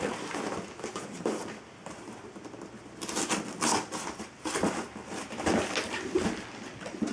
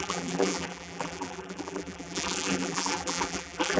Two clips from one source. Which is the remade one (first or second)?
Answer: second